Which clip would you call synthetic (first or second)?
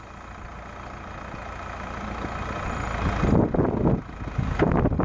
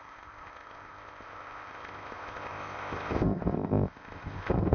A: second